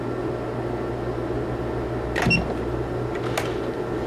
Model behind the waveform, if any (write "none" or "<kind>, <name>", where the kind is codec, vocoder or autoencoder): none